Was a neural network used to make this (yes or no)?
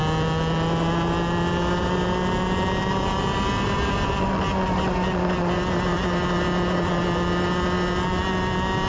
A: no